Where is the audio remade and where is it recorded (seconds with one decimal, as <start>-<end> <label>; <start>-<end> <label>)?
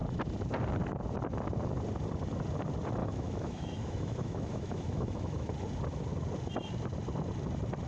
0.0-3.0 recorded; 3.0-5.5 remade; 5.5-7.9 recorded